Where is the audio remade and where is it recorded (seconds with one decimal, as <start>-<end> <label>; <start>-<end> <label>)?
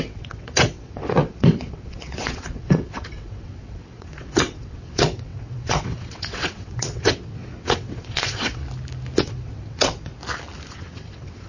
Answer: 0.0-8.6 remade; 8.6-9.2 recorded; 9.2-10.1 remade; 10.1-10.7 recorded; 10.7-11.5 remade